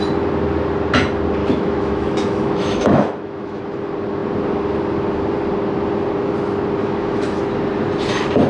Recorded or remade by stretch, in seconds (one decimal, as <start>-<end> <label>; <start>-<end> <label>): 0.0-1.4 recorded; 1.4-3.6 remade; 3.6-6.8 recorded; 6.8-7.4 remade; 7.4-8.5 recorded